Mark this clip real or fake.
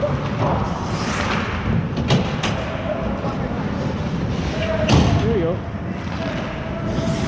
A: real